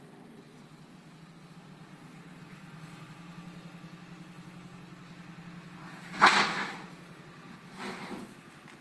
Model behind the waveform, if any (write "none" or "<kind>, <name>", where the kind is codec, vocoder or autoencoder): none